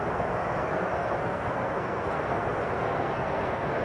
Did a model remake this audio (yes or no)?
yes